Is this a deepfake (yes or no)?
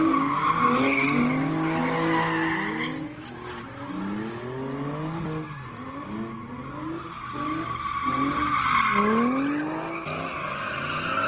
no